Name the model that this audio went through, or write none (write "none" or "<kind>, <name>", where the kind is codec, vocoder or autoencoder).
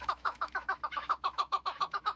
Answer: autoencoder, DAC-VAE